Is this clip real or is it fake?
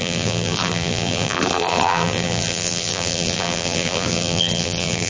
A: fake